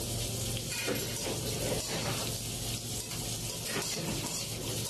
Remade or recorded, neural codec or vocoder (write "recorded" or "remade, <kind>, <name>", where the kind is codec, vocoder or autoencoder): recorded